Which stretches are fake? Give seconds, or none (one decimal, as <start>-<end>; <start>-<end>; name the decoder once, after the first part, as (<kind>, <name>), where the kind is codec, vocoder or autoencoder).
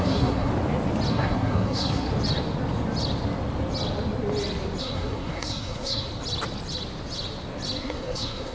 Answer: 0.0-0.5 (codec, SNAC); 1.1-2.1; 4.8-6.1; 7.8-8.5